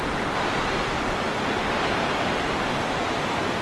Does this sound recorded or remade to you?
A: recorded